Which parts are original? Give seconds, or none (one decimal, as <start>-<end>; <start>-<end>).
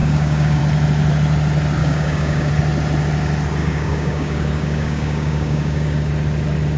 0.6-1.8; 2.5-3.6; 6.1-6.8